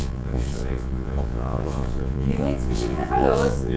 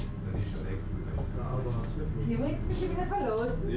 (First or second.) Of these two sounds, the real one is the second